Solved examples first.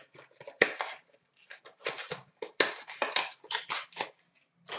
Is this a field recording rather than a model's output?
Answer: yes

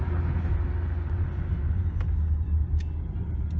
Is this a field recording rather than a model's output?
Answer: yes